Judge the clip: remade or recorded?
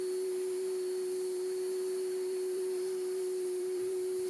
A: remade